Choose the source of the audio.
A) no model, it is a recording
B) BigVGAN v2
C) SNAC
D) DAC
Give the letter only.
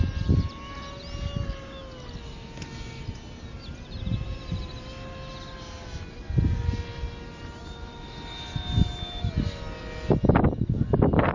A